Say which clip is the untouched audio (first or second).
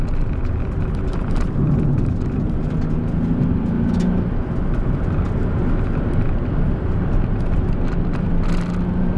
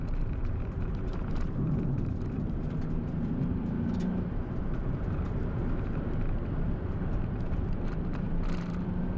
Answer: first